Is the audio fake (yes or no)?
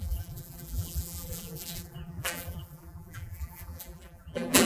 yes